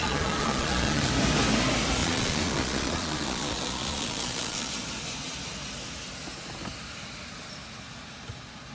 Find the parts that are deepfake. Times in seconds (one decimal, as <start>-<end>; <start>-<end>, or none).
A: 0.0-1.1; 2.0-4.7